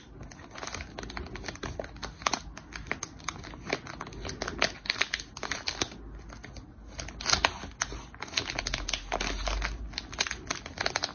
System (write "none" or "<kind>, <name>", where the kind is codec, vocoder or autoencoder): none